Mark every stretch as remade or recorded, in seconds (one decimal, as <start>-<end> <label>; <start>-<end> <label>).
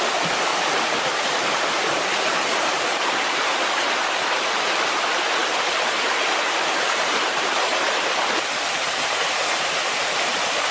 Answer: 0.0-0.5 recorded; 0.5-3.7 remade; 3.7-5.4 recorded; 5.4-10.7 remade